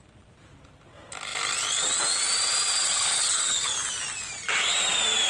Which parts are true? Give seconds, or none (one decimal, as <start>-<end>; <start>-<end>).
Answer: 0.0-2.7; 3.7-5.3